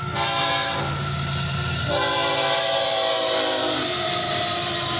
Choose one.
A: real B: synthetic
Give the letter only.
A